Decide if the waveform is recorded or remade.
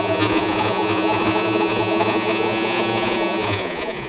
remade